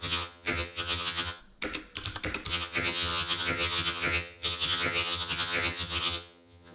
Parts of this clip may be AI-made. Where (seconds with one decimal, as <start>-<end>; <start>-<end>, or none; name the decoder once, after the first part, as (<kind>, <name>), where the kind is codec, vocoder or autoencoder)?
0.0-1.4 (vocoder, HiFi-GAN); 2.5-6.7

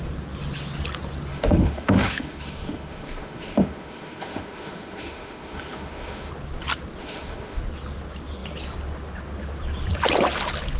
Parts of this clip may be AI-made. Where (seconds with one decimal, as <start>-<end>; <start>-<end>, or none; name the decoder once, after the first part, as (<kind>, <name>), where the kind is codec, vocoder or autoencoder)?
1.3-6.3 (autoencoder, DAC-VAE); 7.0-7.6

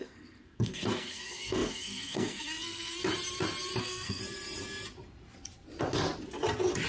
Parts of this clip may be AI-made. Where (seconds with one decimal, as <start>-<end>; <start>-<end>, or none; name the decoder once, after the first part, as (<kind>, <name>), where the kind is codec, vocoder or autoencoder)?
0.0-3.0 (codec, SNAC); 3.8-4.2

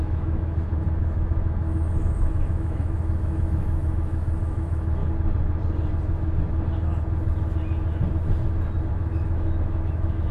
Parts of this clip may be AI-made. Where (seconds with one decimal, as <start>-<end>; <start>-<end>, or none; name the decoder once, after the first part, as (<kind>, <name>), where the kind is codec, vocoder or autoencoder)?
0.0-5.0 (autoencoder, DAC-VAE); 8.9-10.3